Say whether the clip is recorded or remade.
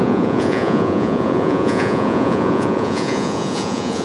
remade